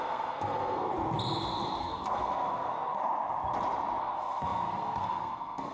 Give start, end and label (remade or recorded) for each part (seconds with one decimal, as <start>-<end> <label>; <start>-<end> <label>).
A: 0.0-0.9 remade; 0.9-1.8 recorded; 1.8-3.0 remade; 3.0-4.0 recorded; 4.0-5.7 remade